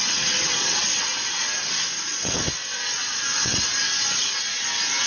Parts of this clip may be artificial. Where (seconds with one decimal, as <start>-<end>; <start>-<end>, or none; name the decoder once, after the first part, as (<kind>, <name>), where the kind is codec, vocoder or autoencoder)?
0.0-5.1 (vocoder, WaveNeXt)